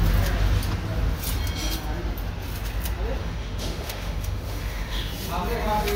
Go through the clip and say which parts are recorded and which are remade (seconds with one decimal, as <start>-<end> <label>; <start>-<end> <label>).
0.0-3.2 recorded; 3.2-5.1 remade; 5.1-6.0 recorded